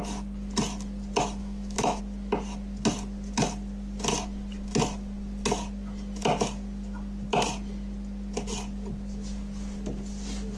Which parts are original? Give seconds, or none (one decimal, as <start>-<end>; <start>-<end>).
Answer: 0.0-1.4; 2.0-10.6